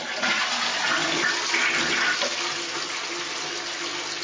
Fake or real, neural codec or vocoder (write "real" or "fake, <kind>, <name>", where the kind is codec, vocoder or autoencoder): real